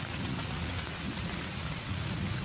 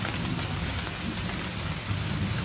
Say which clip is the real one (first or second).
second